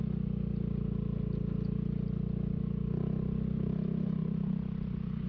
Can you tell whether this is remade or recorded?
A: recorded